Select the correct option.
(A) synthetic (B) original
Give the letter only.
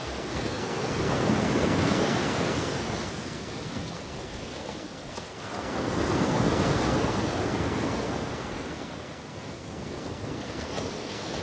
A